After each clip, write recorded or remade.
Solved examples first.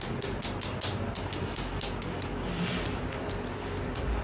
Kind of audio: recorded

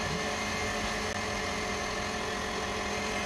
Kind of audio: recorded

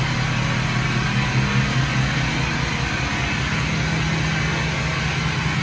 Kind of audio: recorded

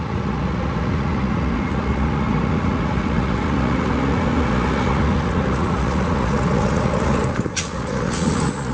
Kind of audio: remade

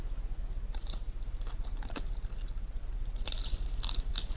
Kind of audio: recorded